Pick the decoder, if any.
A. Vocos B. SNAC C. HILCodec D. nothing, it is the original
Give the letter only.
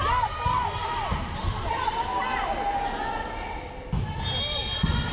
D